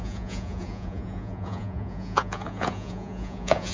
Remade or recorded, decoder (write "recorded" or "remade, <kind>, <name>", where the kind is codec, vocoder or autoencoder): remade, vocoder, Vocos